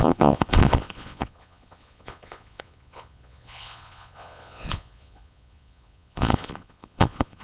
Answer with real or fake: fake